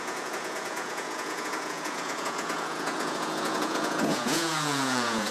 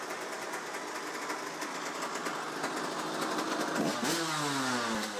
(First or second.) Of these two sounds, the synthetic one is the first